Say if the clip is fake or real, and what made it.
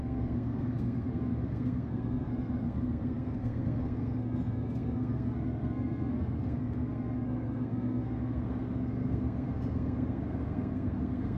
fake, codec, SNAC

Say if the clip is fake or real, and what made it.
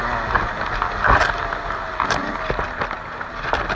real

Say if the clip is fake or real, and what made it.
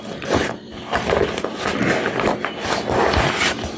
real